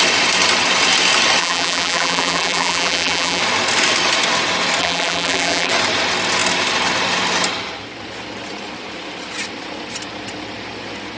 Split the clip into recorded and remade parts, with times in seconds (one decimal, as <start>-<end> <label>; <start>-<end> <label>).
0.0-1.4 recorded; 1.4-3.4 remade; 3.4-4.8 recorded; 4.8-5.7 remade; 5.7-11.2 recorded

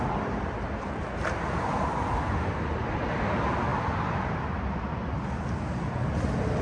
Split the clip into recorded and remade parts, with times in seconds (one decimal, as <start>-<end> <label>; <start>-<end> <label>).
0.0-6.6 recorded

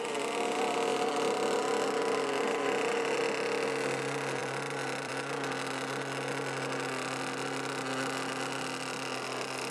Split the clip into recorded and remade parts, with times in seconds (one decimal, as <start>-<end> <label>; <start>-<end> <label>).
0.0-4.4 recorded; 4.4-5.1 remade; 5.1-9.7 recorded